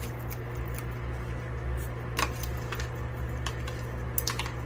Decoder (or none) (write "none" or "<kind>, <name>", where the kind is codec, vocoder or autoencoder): none